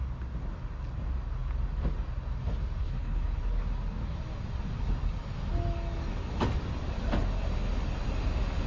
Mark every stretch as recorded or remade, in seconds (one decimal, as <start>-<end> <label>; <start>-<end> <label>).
0.0-2.8 recorded; 2.8-3.4 remade; 3.4-8.7 recorded